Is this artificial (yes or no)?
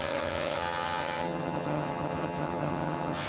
yes